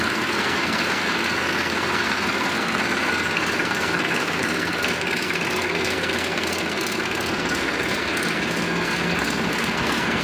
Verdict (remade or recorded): remade